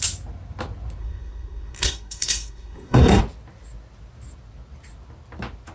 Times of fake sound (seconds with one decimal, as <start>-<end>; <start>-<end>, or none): 1.0-3.2